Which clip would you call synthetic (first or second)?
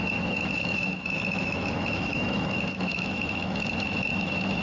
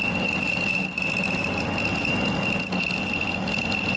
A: first